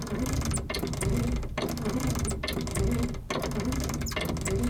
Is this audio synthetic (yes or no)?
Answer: no